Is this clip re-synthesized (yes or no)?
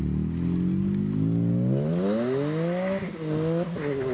no